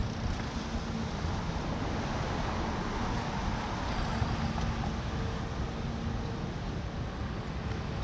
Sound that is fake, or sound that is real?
real